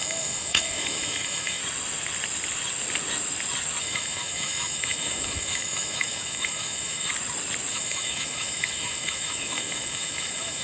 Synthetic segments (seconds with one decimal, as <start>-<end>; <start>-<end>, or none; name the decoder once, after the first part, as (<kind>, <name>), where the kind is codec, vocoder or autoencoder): 0.0-1.6 (autoencoder, DAC-VAE); 3.8-7.1; 7.7-10.6